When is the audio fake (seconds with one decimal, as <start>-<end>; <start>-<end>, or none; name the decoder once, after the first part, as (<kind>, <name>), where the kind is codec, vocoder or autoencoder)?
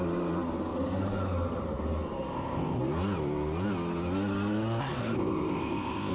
2.3-2.8 (codec, ZipCodec); 4.8-6.1